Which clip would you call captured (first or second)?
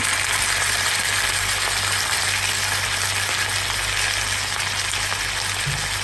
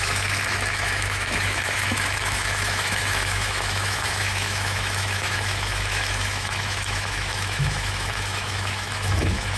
first